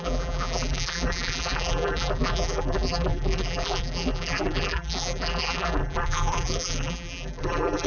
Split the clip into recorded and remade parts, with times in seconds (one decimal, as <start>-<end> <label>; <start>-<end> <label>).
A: 0.0-7.9 remade

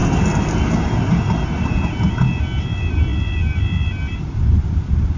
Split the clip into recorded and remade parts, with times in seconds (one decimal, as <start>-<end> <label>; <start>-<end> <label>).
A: 0.0-1.1 remade; 1.1-5.2 recorded

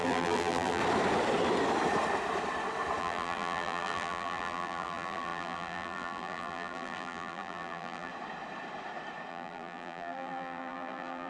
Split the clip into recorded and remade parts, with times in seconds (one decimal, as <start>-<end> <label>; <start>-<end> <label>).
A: 0.0-0.8 remade; 0.8-3.0 recorded; 3.0-8.1 remade; 8.1-9.3 recorded; 9.3-11.3 remade

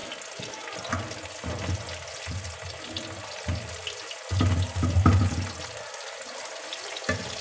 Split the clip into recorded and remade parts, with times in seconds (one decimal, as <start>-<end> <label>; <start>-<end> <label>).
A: 0.0-7.4 recorded

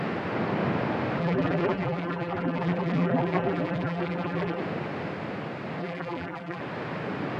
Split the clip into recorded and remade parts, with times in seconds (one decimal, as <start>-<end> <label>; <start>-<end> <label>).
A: 0.0-1.2 recorded; 1.2-4.6 remade; 4.6-5.8 recorded; 5.8-6.6 remade; 6.6-7.4 recorded